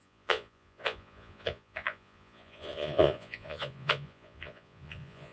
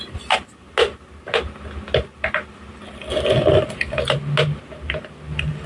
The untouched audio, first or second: second